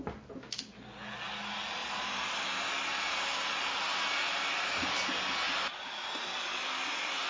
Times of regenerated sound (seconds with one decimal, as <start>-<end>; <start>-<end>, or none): none